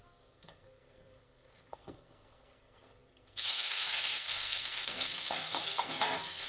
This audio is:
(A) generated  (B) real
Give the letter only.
A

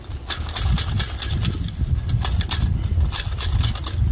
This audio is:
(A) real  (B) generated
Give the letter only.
A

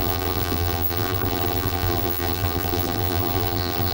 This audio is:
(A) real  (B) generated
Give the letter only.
B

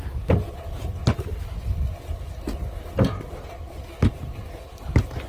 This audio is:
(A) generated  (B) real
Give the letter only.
B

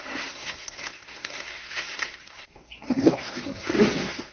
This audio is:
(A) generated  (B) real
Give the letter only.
A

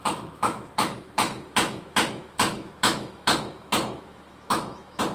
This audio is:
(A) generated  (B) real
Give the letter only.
A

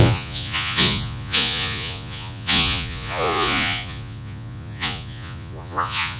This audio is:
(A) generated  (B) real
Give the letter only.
A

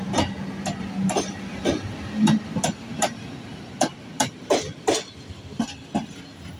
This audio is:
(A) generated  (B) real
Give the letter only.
B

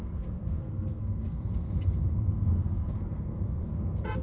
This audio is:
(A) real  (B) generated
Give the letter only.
B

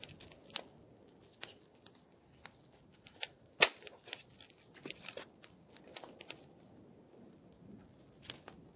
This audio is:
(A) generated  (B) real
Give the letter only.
B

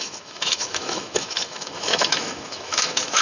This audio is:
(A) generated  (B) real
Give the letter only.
A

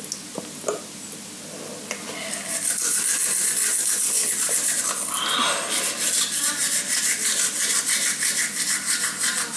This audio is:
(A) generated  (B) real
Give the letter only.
B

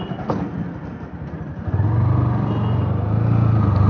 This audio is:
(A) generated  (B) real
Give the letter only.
B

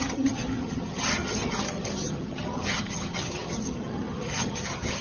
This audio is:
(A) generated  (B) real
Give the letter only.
A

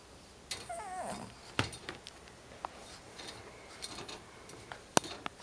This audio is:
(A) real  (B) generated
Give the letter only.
A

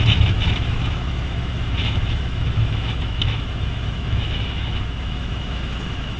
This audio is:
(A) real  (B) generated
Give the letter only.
B